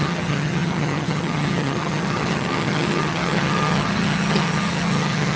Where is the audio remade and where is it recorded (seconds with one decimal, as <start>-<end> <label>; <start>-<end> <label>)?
0.0-5.4 remade